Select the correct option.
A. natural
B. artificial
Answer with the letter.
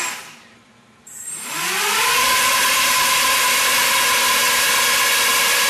B